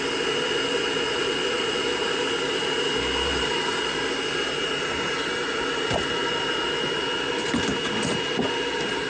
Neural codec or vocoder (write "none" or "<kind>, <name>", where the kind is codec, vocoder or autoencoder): none